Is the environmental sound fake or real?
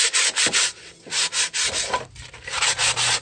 real